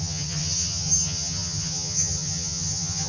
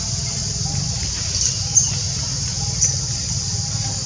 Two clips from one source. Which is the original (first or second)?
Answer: second